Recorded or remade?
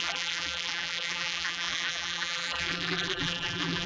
remade